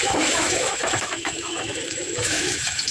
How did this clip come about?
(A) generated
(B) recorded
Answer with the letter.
A